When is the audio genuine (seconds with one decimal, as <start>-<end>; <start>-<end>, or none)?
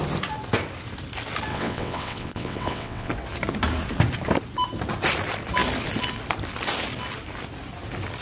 0.0-1.5; 3.1-8.2